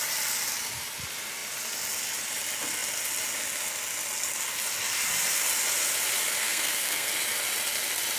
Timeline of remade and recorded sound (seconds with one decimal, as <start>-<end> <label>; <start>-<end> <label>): 0.0-6.4 recorded; 6.4-7.1 remade; 7.1-8.2 recorded